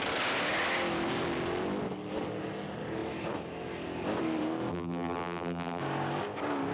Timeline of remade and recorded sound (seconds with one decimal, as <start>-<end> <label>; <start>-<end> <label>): 0.0-4.7 recorded; 4.7-5.8 remade; 5.8-6.7 recorded